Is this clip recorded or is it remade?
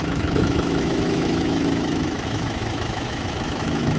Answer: remade